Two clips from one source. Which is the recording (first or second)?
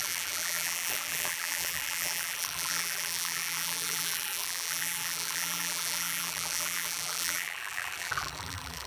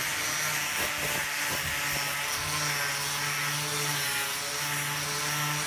second